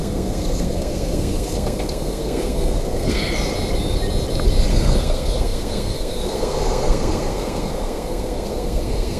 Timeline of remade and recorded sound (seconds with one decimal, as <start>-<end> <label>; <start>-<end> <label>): 0.0-3.2 remade; 3.2-4.7 recorded; 4.7-9.2 remade